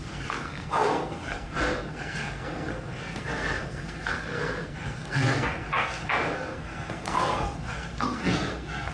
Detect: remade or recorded remade